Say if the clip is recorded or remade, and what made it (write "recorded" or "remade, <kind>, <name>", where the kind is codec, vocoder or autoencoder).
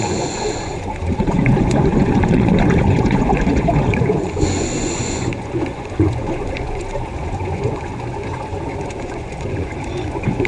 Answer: remade, vocoder, Vocos